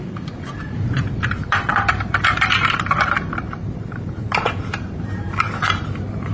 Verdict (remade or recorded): remade